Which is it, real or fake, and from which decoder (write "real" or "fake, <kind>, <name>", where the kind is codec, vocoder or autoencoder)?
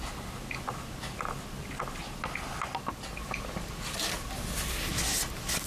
real